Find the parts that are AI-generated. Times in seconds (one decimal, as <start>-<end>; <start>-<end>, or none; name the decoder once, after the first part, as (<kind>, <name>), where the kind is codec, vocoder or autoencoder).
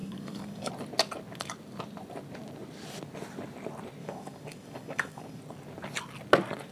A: 0.0-0.7 (codec, DAC); 4.0-5.4